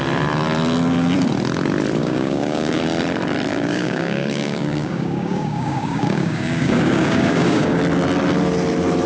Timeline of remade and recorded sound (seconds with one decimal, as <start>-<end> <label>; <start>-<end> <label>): 0.0-2.0 recorded; 2.0-2.8 remade; 2.8-3.5 recorded; 3.5-7.8 remade; 7.8-9.1 recorded